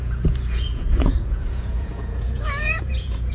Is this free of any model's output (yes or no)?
no